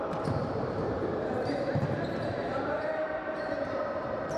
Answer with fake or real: fake